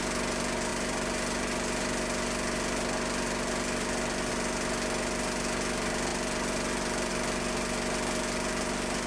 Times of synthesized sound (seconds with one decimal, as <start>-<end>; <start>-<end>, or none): none